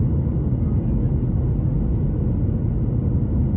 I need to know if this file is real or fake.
real